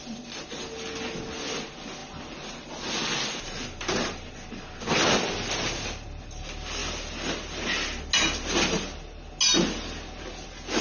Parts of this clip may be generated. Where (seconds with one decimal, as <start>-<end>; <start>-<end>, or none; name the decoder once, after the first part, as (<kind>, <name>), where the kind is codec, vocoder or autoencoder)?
none